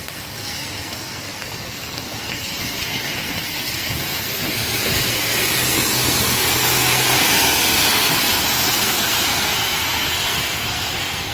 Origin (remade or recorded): remade